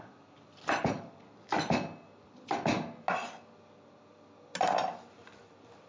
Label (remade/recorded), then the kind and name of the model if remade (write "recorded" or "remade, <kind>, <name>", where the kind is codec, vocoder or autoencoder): recorded